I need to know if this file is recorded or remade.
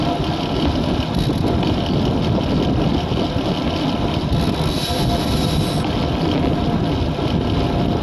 recorded